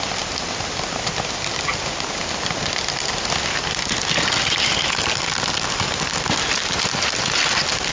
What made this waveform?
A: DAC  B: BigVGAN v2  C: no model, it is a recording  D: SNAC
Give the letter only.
C